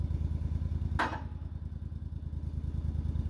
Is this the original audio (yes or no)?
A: yes